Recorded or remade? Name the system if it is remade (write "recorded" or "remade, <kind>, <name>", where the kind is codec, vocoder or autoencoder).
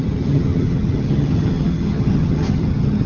remade, vocoder, HiFi-GAN